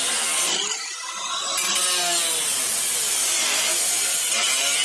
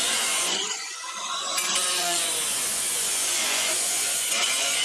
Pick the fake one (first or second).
second